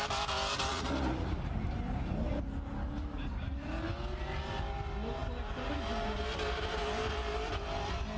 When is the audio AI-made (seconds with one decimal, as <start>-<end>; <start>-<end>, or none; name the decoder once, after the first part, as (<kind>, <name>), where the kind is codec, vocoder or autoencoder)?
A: 0.7-1.3 (vocoder, Vocos)